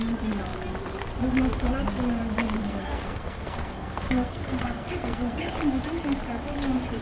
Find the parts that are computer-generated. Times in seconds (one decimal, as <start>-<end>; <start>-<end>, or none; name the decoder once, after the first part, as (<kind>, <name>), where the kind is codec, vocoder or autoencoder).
2.6-5.5 (codec, SNAC)